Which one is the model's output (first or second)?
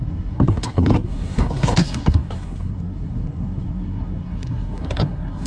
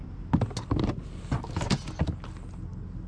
first